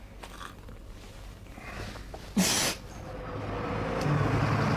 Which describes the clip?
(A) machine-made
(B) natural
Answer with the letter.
B